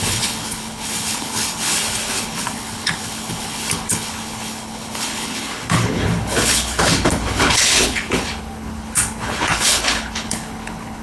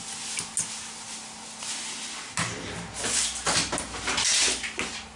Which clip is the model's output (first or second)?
first